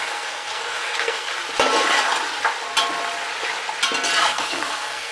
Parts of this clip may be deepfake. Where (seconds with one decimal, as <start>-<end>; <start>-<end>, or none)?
0.0-1.3; 4.2-5.1